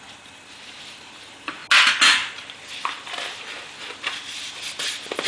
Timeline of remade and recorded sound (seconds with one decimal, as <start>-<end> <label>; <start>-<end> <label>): 0.0-5.3 recorded